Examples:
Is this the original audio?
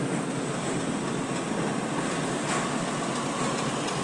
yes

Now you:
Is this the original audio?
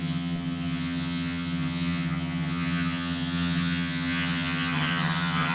no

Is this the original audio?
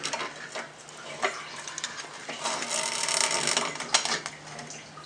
yes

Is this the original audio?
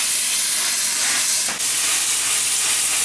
yes